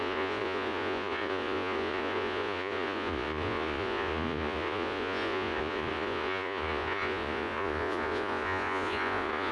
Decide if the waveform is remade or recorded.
remade